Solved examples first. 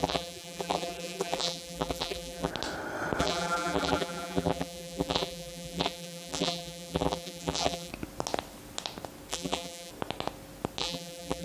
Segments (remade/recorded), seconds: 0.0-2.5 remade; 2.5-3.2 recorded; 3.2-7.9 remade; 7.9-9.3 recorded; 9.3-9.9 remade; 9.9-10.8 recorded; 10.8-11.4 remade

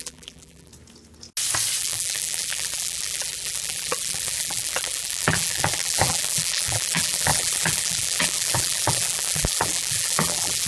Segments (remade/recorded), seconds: 0.0-0.7 remade; 0.7-1.8 recorded; 1.8-10.7 remade

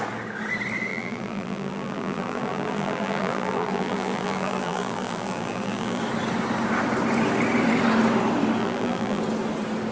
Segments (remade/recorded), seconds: 0.0-0.9 recorded; 0.9-6.0 remade; 6.0-8.6 recorded; 8.6-9.2 remade; 9.2-9.9 recorded

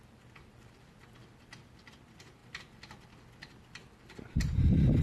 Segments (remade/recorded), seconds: 0.0-5.0 remade

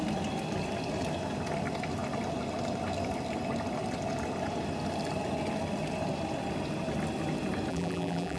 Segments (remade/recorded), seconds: 0.0-7.7 recorded; 7.7-8.4 remade

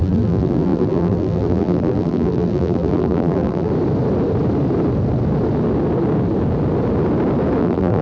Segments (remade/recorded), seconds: 0.0-3.7 remade; 3.7-7.6 recorded; 7.6-8.0 remade

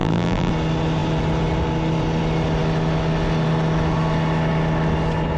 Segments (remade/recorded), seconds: 0.0-0.5 remade; 0.5-5.4 recorded

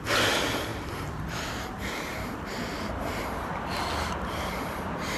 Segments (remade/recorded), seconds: 0.0-0.7 recorded; 0.7-3.7 remade; 3.7-5.2 recorded